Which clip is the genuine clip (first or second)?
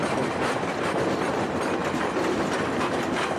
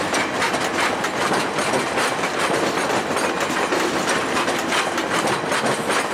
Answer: second